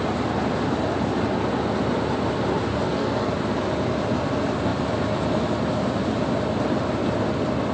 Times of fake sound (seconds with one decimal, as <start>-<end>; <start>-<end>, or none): 2.7-3.3